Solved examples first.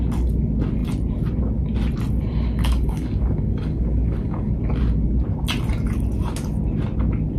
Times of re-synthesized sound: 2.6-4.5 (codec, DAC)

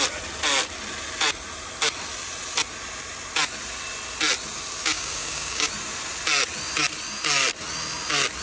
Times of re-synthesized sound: 4.8-5.7 (codec, DAC)

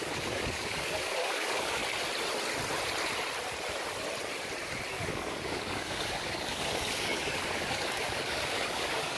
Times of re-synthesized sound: 0.0-1.8 (codec, DAC); 4.9-9.2

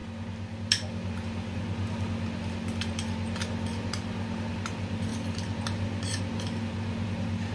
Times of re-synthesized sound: none

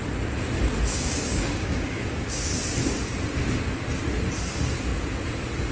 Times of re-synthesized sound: 0.9-2.5 (codec, DAC)

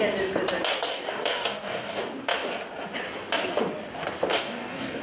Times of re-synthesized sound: 0.9-2.0 (codec, DAC); 4.3-5.0